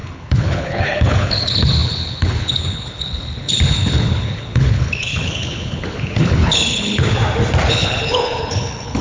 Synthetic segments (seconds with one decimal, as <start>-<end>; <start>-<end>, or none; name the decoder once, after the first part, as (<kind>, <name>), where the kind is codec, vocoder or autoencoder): 0.0-7.2 (codec, HILCodec); 7.7-9.0